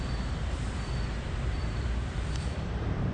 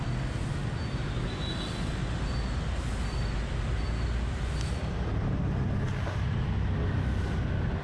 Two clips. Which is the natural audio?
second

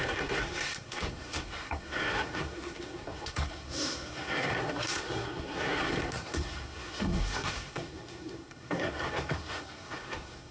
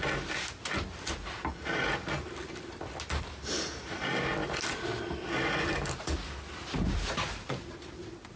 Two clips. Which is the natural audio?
second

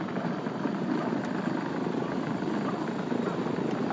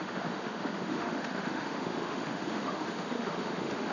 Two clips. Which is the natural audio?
first